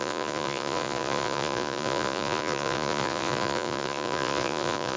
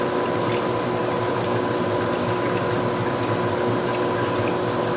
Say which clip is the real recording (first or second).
second